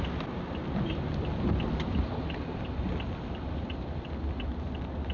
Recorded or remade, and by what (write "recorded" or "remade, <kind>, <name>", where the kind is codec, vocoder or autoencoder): recorded